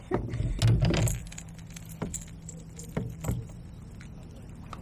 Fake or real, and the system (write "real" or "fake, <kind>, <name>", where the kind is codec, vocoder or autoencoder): real